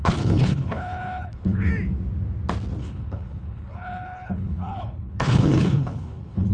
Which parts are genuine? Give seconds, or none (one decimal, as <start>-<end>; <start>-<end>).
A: 1.7-2.8